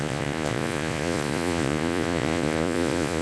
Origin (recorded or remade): remade